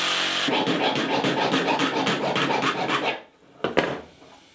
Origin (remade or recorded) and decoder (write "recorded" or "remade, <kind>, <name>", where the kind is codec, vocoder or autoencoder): recorded